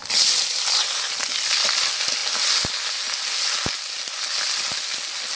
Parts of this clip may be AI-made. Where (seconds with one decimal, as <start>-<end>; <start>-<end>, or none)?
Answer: 0.0-0.8